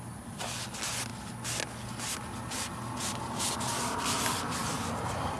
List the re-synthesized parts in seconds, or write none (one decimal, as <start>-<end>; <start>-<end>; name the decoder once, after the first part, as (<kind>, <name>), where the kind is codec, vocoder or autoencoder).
4.6-5.4 (vocoder, BigVGAN v2)